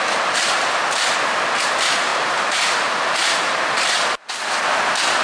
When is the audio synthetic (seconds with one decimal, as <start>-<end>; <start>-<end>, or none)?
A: none